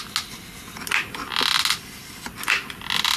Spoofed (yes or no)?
no